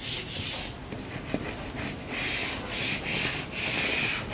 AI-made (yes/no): no